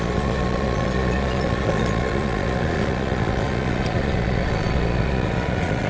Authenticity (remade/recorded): remade